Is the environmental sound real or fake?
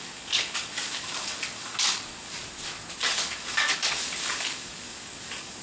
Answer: fake